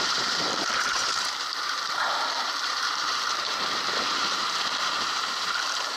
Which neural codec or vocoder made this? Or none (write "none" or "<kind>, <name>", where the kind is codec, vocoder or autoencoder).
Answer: vocoder, BigVGAN v2